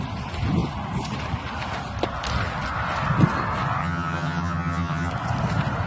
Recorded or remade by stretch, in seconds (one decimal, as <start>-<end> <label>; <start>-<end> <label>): 0.0-3.8 recorded; 3.8-5.1 remade; 5.1-5.9 recorded